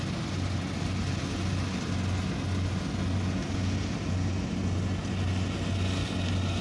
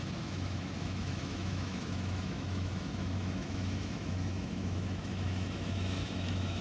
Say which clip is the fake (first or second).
second